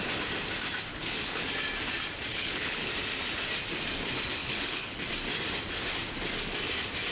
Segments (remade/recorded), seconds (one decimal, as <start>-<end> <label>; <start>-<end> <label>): 0.0-0.9 recorded; 0.9-1.4 remade; 1.4-2.3 recorded; 2.3-2.9 remade; 2.9-4.4 recorded; 4.4-5.1 remade; 5.1-7.1 recorded